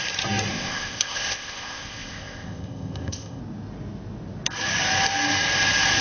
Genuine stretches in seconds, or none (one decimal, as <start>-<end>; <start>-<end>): 0.0-0.5; 3.4-6.0